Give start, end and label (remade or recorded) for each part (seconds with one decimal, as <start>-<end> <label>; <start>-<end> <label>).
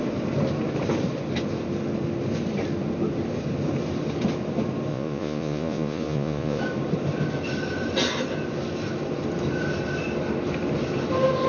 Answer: 0.0-4.9 recorded; 4.9-6.6 remade; 6.6-11.5 recorded